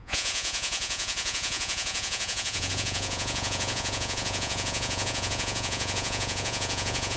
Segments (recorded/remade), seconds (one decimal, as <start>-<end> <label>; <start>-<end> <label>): 0.0-7.2 remade